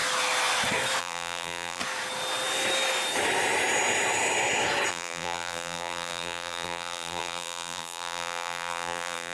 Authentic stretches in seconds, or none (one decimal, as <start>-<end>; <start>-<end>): 0.0-1.0; 1.8-4.9